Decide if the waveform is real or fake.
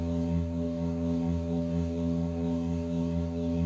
fake